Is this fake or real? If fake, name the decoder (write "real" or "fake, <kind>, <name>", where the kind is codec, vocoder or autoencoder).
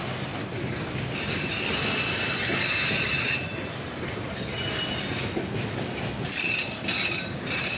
real